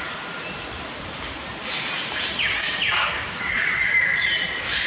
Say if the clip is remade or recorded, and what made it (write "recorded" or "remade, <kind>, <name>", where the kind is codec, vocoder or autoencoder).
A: recorded